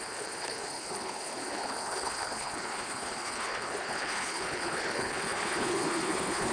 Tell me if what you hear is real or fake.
fake